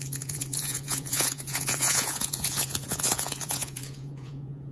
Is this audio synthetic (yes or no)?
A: yes